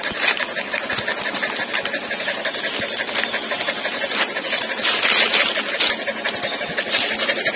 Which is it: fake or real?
real